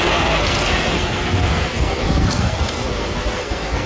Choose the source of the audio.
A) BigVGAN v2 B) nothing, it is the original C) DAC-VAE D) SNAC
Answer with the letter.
D